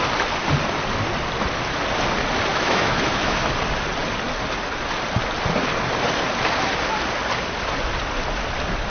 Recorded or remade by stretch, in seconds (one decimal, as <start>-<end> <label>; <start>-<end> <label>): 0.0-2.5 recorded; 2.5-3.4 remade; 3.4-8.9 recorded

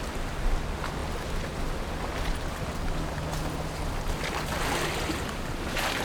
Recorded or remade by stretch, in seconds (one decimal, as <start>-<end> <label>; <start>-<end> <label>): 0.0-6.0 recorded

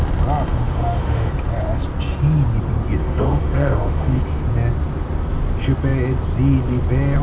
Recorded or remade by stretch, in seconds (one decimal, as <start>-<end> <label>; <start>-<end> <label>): 0.0-0.5 recorded; 0.5-1.3 remade; 1.3-3.0 recorded; 3.0-4.2 remade; 4.2-7.2 recorded